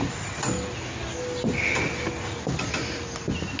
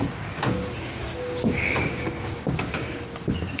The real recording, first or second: first